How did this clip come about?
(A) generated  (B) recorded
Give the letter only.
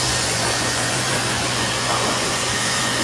A